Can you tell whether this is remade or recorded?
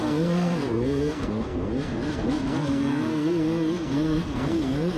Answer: remade